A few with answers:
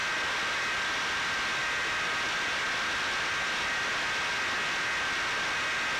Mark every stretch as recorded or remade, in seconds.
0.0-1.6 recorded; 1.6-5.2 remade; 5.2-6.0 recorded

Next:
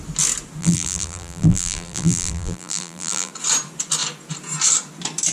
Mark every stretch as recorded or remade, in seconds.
0.0-0.6 recorded; 0.6-3.3 remade; 3.3-5.3 recorded